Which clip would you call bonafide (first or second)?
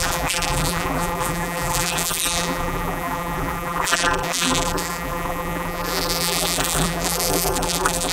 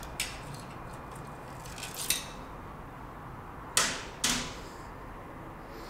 second